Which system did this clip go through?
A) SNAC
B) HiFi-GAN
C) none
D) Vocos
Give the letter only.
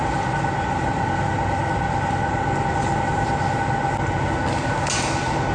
C